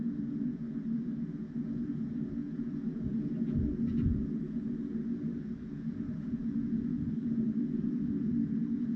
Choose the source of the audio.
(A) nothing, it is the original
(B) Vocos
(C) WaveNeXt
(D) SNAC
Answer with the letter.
B